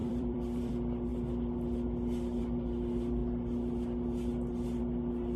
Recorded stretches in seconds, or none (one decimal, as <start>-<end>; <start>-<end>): 0.7-5.4